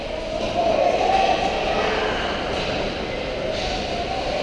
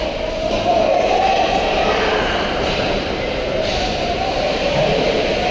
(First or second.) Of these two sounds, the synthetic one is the second